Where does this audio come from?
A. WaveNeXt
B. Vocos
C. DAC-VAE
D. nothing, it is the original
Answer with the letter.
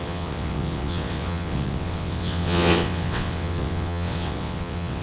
A